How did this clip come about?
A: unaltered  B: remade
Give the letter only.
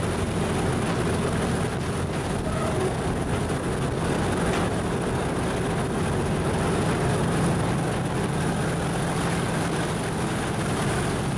A